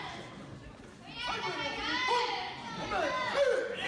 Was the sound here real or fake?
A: real